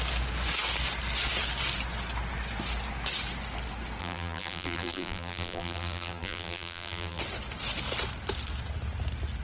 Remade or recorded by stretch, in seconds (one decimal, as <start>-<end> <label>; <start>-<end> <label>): 0.0-4.0 recorded; 4.0-7.2 remade; 7.2-9.4 recorded